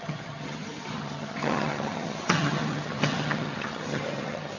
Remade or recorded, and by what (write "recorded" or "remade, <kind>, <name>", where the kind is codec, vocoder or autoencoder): remade, vocoder, HiFi-GAN